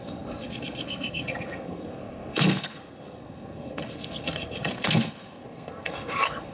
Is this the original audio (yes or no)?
no